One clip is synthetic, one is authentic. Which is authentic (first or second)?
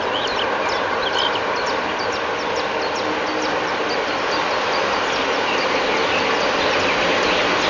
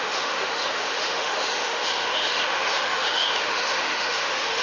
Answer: first